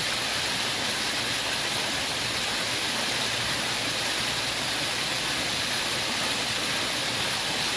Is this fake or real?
real